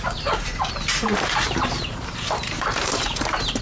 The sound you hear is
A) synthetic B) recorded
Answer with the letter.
A